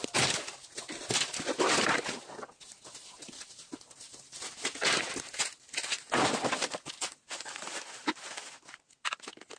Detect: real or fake real